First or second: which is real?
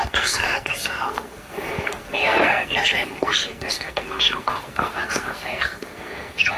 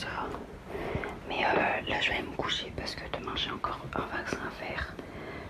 second